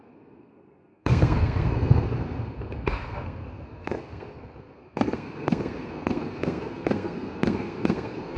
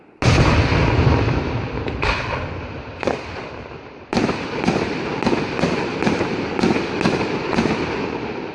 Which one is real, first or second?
second